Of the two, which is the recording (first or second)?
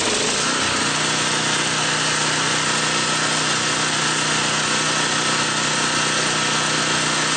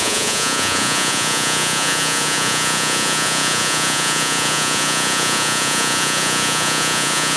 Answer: first